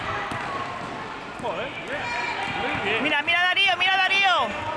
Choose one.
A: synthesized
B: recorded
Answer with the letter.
B